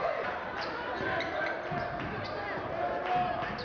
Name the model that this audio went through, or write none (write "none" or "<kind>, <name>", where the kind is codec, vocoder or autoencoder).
none